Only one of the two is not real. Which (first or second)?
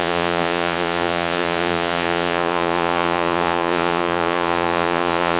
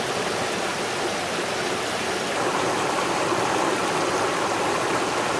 first